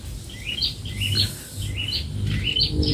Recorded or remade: recorded